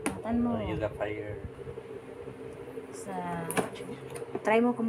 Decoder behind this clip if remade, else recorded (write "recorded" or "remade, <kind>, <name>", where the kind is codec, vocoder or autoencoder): recorded